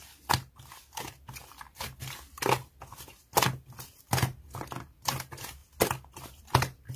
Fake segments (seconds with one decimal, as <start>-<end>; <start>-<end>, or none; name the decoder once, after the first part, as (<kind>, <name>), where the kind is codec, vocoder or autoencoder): none